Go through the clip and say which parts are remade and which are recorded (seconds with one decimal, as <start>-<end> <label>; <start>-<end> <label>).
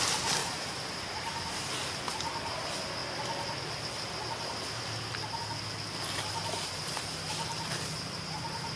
0.0-0.4 recorded; 0.4-1.7 remade; 1.7-8.8 recorded